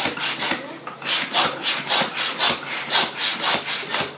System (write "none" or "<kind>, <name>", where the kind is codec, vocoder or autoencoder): none